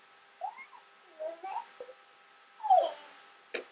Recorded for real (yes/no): yes